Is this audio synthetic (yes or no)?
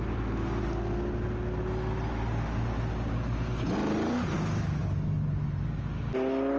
no